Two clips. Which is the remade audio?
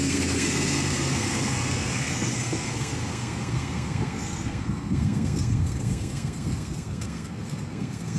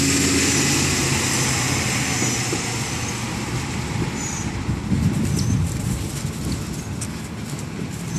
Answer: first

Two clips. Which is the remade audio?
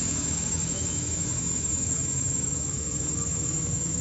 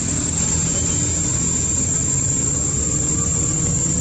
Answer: first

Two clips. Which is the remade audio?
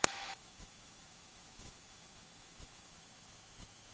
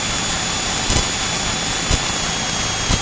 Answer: first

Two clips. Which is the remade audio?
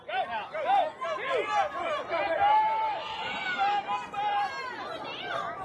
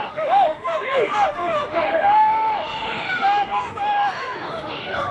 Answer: second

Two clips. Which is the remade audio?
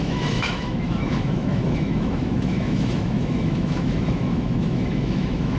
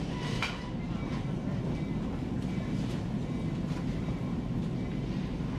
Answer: first